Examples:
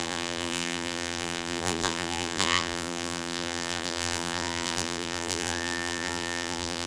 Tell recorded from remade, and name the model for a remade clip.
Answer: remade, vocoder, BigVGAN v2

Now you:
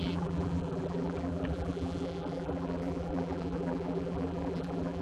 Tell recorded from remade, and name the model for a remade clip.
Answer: remade, vocoder, BigVGAN v2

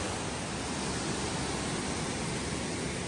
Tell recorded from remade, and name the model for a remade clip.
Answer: recorded